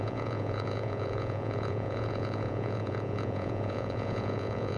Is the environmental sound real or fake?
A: fake